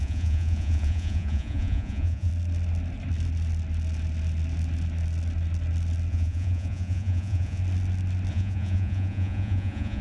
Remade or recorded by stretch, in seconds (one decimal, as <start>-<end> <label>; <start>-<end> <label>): 0.0-2.3 remade; 2.3-6.1 recorded; 6.1-7.6 remade; 7.6-8.3 recorded; 8.3-10.0 remade